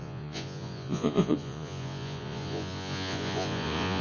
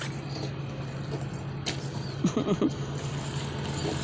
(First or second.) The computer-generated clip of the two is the first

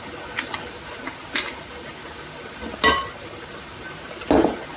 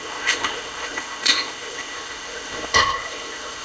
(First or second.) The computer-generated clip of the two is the second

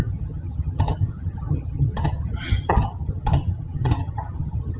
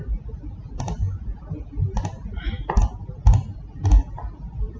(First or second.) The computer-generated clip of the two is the first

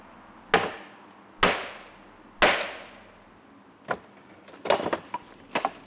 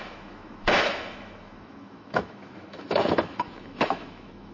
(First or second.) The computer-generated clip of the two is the second